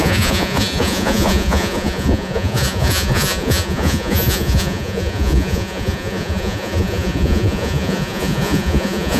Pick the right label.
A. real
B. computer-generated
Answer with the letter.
B